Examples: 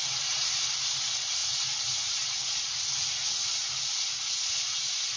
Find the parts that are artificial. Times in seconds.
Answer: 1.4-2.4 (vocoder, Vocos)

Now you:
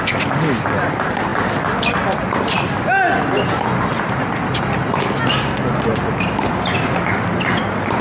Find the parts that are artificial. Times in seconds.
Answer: none

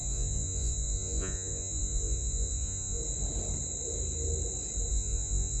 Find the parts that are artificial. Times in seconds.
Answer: 0.0-3.0 (vocoder, Vocos); 4.9-5.6

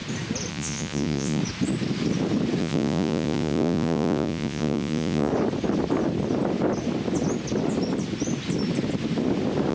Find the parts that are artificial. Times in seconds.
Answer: 0.5-1.4 (vocoder, Vocos); 2.6-5.3

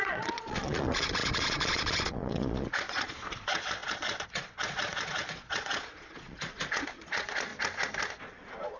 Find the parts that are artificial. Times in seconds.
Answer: 0.0-7.5 (vocoder, Vocos); 8.1-8.8